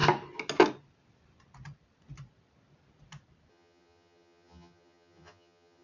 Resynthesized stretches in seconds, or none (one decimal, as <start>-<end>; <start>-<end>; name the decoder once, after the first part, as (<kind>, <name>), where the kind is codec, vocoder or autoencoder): 3.5-5.8 (vocoder, HiFi-GAN)